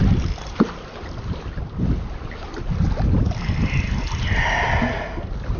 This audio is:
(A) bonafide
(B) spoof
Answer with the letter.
A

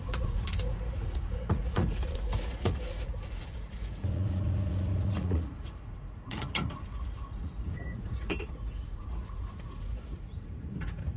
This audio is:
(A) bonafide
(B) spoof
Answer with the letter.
B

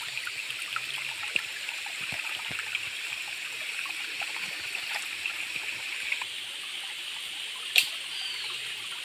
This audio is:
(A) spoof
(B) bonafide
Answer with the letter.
B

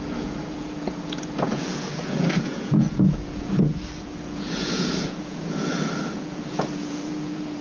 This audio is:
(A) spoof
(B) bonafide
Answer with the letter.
A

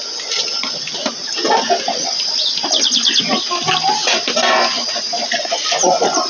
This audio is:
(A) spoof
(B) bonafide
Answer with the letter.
B